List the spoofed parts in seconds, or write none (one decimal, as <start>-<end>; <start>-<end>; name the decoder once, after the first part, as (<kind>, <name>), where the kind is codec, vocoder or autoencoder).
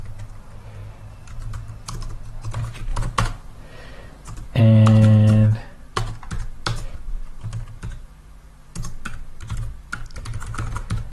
none